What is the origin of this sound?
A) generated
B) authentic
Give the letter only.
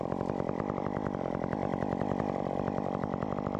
B